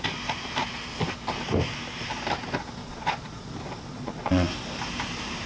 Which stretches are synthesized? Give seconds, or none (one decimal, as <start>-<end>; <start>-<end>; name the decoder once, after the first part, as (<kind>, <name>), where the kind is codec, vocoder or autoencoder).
2.8-3.5 (vocoder, Vocos); 3.9-4.5